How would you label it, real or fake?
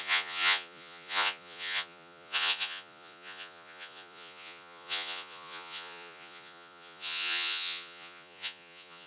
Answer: fake